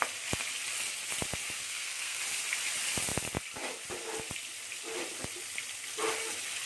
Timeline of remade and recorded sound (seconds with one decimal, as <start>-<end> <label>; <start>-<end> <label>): 0.0-1.6 recorded; 1.6-2.2 remade; 2.2-6.7 recorded